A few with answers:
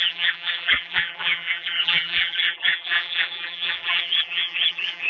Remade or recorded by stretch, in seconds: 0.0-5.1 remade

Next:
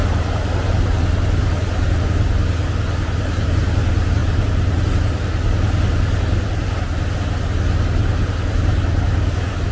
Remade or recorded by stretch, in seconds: 0.0-4.2 recorded; 4.2-4.9 remade; 4.9-9.7 recorded

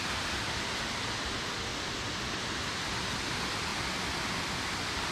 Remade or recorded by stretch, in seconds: 0.0-5.1 recorded

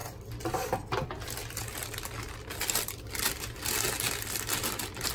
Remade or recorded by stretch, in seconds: 0.0-5.1 recorded